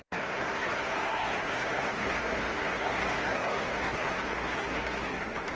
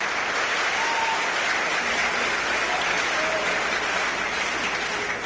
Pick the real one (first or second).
second